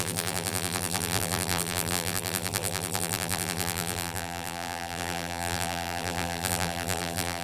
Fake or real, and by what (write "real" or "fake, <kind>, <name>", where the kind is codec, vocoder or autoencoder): fake, vocoder, BigVGAN v2